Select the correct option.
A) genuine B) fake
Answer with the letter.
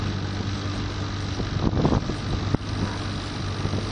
A